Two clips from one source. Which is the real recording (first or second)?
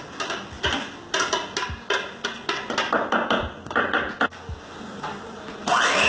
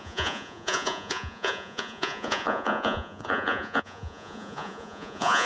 first